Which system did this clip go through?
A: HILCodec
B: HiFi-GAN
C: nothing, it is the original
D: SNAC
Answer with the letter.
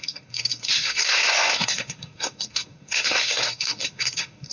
D